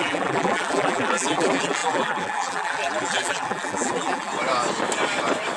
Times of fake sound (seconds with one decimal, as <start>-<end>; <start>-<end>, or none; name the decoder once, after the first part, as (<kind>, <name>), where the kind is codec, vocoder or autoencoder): 0.0-4.3 (vocoder, BigVGAN v2)